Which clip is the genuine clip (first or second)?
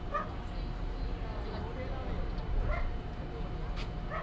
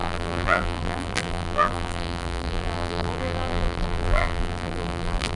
first